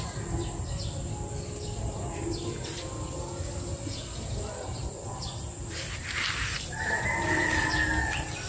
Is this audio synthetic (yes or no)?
no